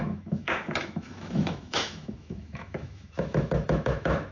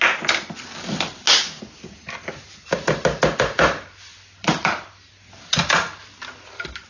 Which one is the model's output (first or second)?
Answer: first